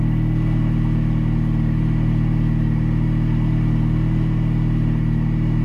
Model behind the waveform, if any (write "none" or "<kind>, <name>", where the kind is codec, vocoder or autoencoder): none